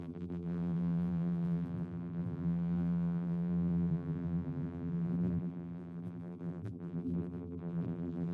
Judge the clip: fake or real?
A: fake